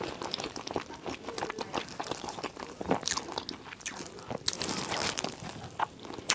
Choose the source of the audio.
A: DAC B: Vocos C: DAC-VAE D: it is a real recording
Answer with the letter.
D